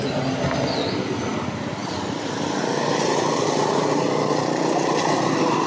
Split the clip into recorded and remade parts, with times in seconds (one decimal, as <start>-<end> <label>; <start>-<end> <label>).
0.0-5.7 recorded